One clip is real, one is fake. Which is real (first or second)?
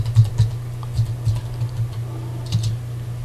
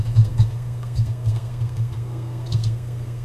first